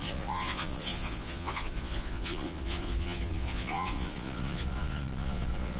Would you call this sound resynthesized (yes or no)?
yes